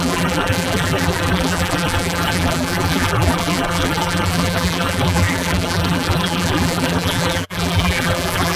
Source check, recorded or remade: remade